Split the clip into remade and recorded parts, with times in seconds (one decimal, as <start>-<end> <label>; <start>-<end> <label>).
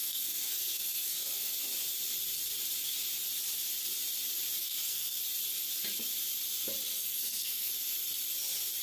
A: 0.0-1.5 remade; 1.5-4.6 recorded; 4.6-5.2 remade; 5.2-6.9 recorded; 6.9-7.7 remade; 7.7-8.8 recorded